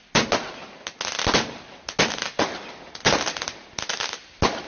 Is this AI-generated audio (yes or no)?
no